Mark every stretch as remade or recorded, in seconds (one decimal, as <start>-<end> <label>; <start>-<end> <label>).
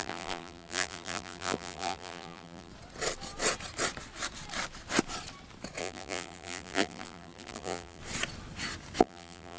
0.0-2.7 remade; 2.7-5.8 recorded; 5.8-8.0 remade; 8.0-9.0 recorded; 9.0-9.6 remade